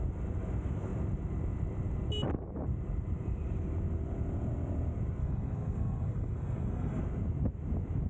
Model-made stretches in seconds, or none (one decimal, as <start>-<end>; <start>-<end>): 5.2-7.0